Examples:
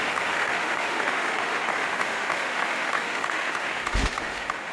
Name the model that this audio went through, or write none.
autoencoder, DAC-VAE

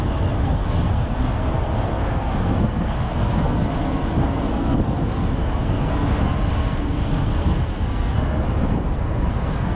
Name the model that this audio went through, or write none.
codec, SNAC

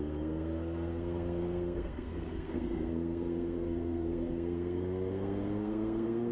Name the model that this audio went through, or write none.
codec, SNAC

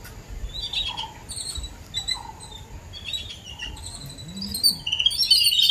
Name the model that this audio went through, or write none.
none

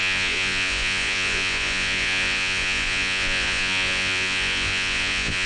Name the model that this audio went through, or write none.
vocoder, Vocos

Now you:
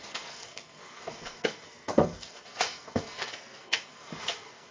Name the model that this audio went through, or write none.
codec, SNAC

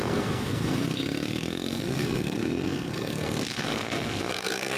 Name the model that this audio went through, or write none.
codec, SNAC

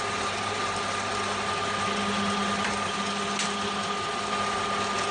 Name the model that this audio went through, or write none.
none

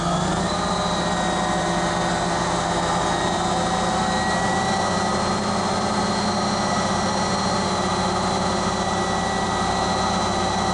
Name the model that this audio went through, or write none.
none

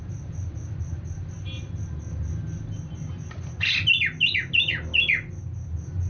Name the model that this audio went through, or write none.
none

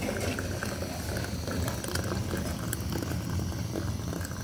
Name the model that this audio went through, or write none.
none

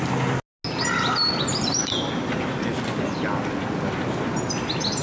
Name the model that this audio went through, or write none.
none